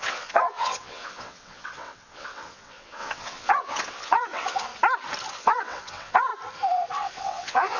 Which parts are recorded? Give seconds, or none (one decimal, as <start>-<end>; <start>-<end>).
4.7-5.3; 6.3-7.0